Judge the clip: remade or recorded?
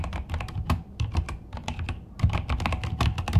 recorded